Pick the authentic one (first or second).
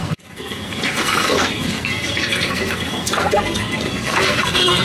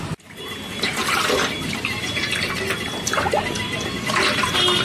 second